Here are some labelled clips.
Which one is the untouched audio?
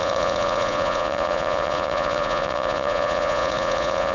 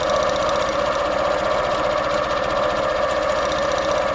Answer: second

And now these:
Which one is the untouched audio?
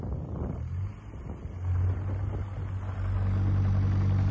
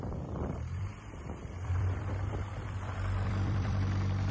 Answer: first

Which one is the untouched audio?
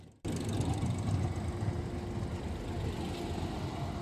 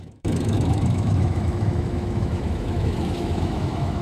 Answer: first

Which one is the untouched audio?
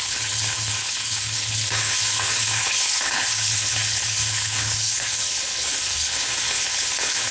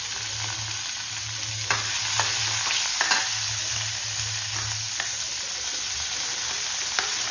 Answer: second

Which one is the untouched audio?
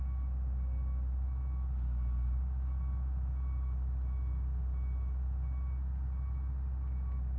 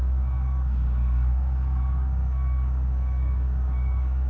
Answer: first